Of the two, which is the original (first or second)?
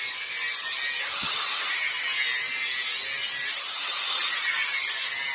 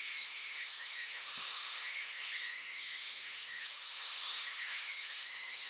first